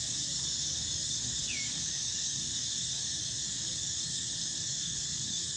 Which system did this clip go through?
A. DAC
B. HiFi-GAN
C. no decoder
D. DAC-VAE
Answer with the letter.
A